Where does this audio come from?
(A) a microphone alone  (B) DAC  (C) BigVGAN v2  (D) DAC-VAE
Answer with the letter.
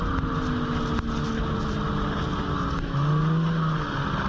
A